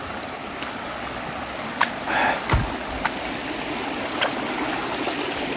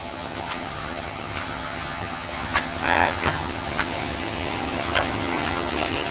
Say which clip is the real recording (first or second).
first